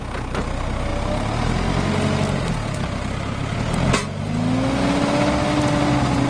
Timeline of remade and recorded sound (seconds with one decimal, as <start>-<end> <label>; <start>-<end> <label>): 0.0-6.3 recorded